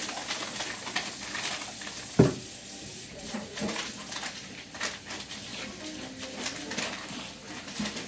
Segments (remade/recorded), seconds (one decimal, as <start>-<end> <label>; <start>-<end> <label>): 0.0-2.9 recorded; 2.9-3.8 remade; 3.8-8.1 recorded